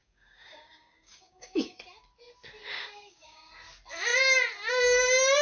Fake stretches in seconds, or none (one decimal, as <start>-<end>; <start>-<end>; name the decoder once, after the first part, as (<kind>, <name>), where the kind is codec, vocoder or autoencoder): 0.0-1.8 (codec, DAC); 2.7-3.5